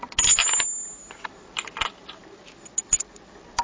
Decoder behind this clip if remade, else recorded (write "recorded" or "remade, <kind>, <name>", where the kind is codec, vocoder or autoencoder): recorded